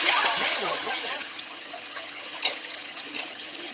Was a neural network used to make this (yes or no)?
yes